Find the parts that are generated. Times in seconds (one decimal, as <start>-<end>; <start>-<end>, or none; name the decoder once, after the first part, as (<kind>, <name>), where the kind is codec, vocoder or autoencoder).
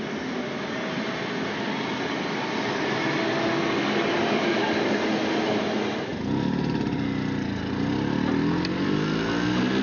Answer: none